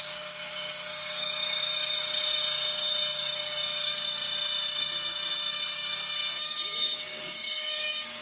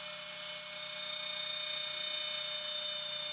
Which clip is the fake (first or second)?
first